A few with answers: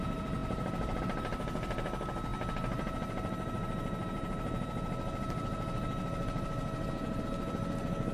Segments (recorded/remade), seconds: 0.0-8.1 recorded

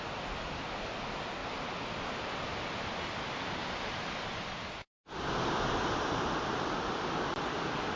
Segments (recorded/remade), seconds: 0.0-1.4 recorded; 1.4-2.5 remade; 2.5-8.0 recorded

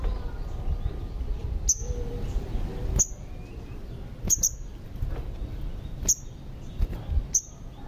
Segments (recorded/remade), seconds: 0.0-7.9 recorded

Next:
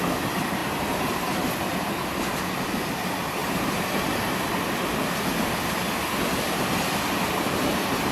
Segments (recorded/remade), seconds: 0.0-0.6 recorded; 0.6-1.5 remade; 1.5-3.4 recorded; 3.4-4.4 remade; 4.4-8.1 recorded

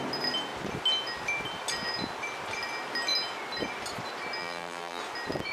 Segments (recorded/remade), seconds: 0.0-4.4 recorded; 4.4-5.0 remade; 5.0-5.5 recorded

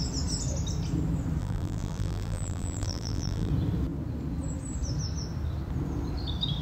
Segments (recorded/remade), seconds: 0.0-1.4 recorded; 1.4-3.5 remade; 3.5-6.6 recorded

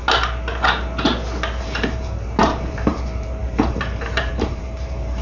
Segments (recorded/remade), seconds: 0.0-1.6 recorded; 1.6-5.2 remade

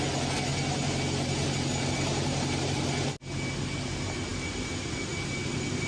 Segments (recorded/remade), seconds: 0.0-5.9 recorded